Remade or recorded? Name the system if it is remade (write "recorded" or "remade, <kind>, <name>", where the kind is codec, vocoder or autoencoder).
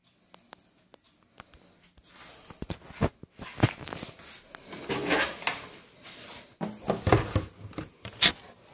recorded